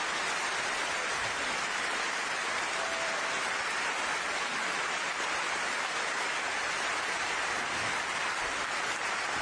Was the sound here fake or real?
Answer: real